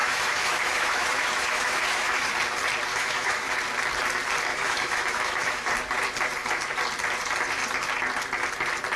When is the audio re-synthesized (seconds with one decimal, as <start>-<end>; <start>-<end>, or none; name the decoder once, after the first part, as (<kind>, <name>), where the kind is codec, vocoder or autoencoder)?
0.0-2.3 (autoencoder, DAC-VAE); 2.9-3.6; 4.5-5.7